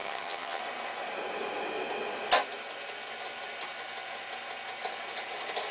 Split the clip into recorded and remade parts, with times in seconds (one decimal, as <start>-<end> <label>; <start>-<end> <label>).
0.0-0.6 remade; 0.6-5.7 recorded